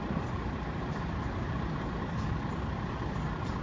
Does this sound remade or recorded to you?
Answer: recorded